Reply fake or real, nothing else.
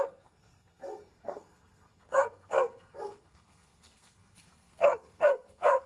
fake